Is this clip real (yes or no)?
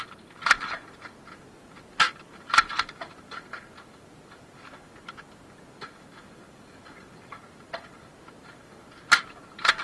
yes